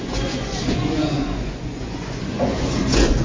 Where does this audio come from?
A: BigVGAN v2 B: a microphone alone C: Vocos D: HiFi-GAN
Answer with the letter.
C